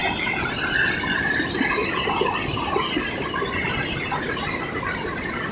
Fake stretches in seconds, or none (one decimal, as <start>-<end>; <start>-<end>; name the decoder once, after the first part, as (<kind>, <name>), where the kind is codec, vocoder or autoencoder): none